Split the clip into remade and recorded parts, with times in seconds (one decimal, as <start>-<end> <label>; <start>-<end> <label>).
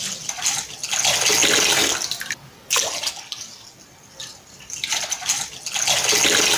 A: 0.0-4.3 recorded; 4.3-5.3 remade; 5.3-6.6 recorded